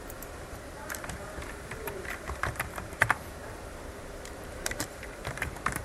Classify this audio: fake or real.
fake